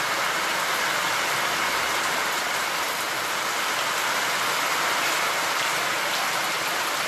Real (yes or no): yes